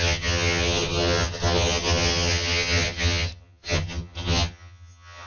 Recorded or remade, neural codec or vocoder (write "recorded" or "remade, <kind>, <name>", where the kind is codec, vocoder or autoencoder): remade, vocoder, HiFi-GAN